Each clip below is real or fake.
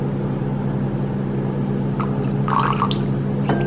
real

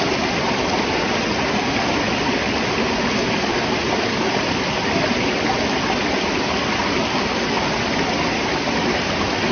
real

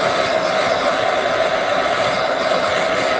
real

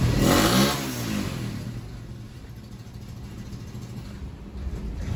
real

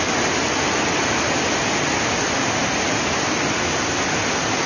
real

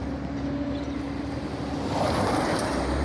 real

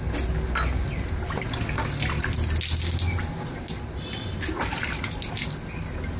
real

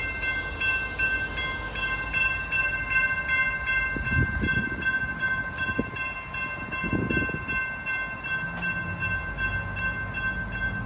real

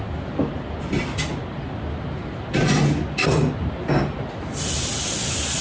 real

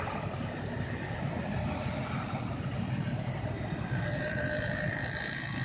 real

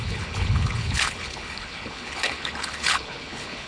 fake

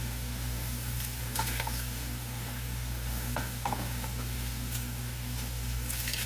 fake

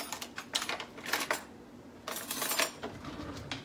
real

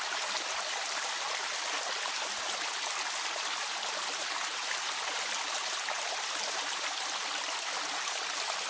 real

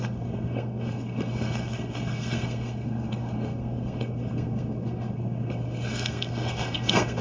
fake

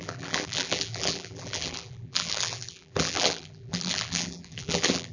fake